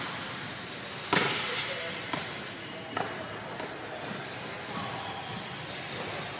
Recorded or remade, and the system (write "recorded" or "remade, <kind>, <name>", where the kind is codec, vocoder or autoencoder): recorded